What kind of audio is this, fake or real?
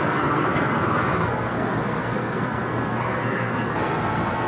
fake